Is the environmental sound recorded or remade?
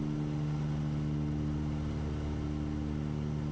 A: recorded